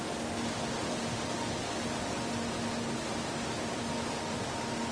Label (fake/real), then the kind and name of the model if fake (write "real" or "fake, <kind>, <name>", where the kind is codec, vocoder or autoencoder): real